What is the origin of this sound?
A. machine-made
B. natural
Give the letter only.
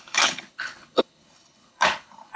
A